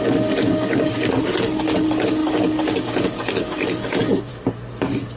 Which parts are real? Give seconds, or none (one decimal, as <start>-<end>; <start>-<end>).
4.3-4.8